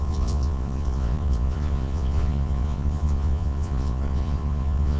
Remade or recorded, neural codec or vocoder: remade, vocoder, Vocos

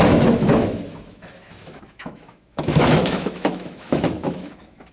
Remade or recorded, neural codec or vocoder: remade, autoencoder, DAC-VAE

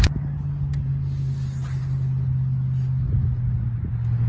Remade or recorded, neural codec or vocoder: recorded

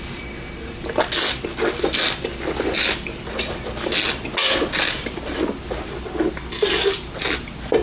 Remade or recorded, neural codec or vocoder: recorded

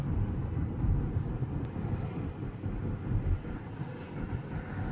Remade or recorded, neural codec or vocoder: recorded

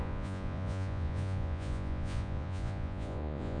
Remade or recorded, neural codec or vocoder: remade, vocoder, Vocos